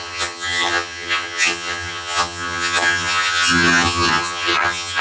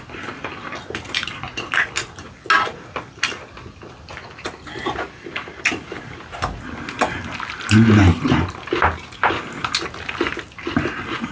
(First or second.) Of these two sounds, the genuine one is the second